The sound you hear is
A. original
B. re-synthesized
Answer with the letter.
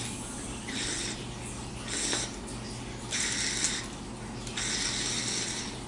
A